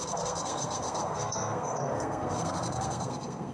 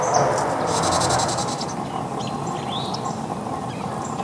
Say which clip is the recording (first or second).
second